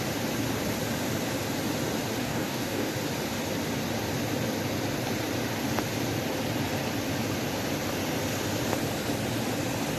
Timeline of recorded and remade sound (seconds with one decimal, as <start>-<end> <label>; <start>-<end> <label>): 0.0-2.2 recorded; 2.2-2.9 remade; 2.9-10.0 recorded